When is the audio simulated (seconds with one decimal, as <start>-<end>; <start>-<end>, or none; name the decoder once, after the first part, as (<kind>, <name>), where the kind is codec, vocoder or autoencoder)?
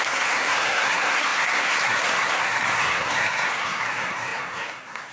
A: 0.0-5.1 (codec, SNAC)